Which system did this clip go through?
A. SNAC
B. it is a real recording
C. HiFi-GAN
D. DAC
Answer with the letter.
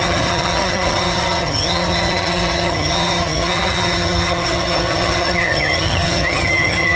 C